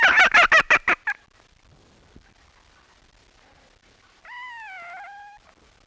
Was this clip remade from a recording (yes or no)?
no